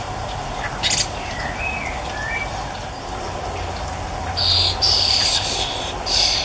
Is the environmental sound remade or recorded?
recorded